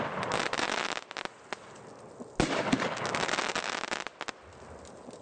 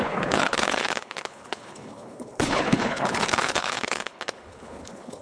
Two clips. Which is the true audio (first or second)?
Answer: first